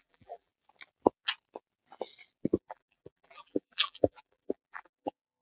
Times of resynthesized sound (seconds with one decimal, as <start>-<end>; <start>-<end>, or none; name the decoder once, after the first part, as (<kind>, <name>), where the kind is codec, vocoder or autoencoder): 0.0-0.5 (vocoder, BigVGAN v2); 2.6-5.4